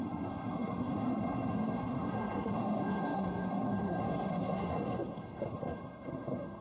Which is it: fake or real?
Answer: fake